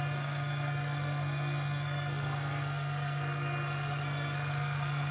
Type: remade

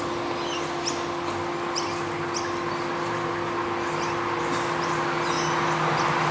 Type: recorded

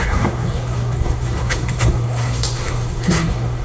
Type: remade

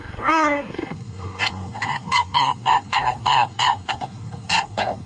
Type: remade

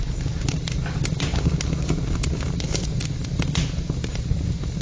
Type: recorded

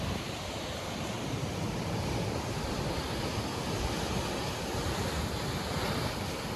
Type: recorded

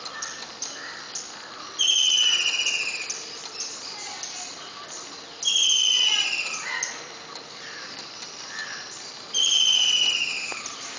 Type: recorded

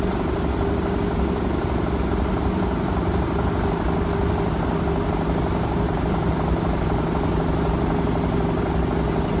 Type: recorded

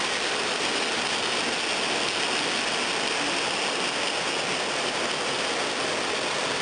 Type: recorded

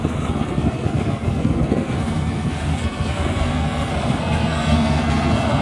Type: remade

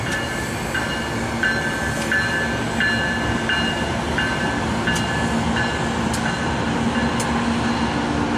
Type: recorded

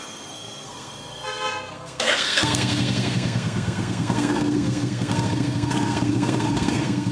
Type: remade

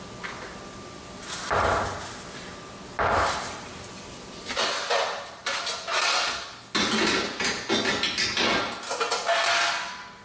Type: recorded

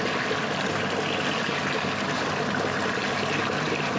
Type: recorded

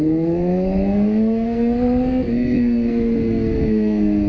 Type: remade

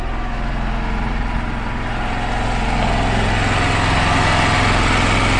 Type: recorded